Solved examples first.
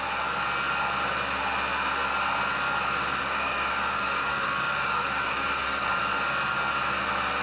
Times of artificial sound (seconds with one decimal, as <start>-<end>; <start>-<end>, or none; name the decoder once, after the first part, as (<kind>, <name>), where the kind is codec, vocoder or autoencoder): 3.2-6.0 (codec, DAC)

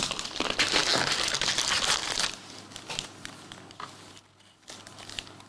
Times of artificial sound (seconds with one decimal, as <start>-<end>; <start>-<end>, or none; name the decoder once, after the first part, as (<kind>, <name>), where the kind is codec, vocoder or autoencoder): none

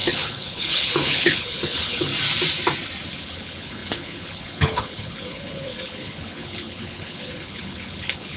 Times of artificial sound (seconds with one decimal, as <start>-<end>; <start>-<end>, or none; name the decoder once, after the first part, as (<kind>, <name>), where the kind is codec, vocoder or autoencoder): 0.0-2.1 (codec, HILCodec); 3.2-8.4